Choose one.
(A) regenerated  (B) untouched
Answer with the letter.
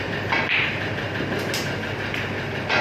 B